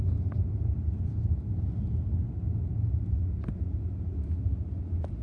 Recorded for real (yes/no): yes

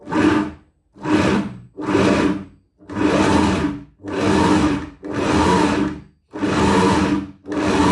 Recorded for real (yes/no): yes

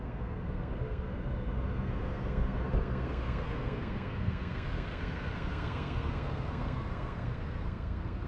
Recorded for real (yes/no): no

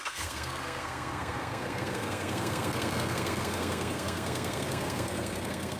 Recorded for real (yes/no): no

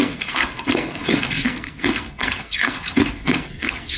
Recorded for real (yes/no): no